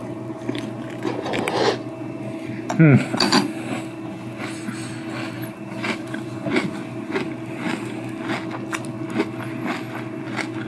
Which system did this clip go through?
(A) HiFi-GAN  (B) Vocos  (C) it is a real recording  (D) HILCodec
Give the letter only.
C